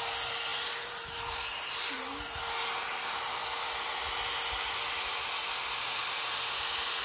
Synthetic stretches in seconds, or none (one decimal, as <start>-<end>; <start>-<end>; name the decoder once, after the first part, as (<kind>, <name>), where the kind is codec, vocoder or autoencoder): 0.5-2.4 (vocoder, BigVGAN v2)

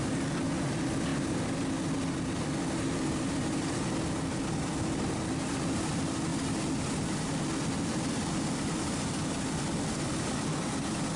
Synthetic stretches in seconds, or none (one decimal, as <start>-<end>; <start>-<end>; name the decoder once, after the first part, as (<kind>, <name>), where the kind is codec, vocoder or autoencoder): 0.0-1.1 (vocoder, BigVGAN v2); 5.4-6.3; 7.8-11.2

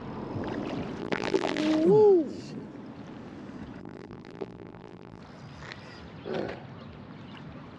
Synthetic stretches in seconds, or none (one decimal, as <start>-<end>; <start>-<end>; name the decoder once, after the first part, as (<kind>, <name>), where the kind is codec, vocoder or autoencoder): 1.0-1.6 (vocoder, BigVGAN v2); 3.8-5.2

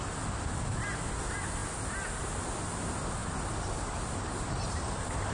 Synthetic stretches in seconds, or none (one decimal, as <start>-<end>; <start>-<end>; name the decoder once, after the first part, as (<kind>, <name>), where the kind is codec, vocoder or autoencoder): none

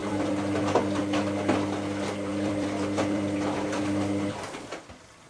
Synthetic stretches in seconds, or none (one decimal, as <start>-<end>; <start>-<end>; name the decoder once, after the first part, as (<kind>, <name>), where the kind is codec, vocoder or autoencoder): 0.0-1.0 (vocoder, BigVGAN v2); 2.3-3.8

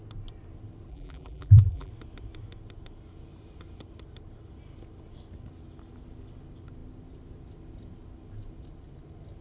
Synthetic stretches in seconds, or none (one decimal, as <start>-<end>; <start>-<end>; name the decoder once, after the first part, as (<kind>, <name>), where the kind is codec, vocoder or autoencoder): 0.9-1.9 (vocoder, BigVGAN v2)

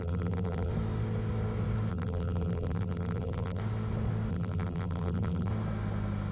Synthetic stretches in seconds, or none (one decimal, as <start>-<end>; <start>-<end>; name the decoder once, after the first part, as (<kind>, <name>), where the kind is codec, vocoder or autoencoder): 0.0-0.7 (vocoder, BigVGAN v2); 1.9-3.6; 4.3-5.5